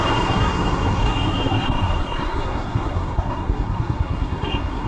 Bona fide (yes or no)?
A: no